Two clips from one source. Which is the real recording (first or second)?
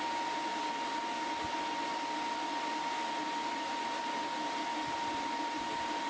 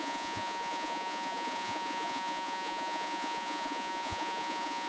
first